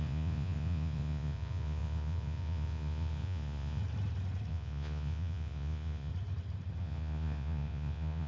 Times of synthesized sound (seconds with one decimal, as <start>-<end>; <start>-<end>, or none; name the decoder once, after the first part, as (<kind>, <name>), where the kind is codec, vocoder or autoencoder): 0.0-3.8 (vocoder, Vocos); 4.5-6.1; 6.8-8.3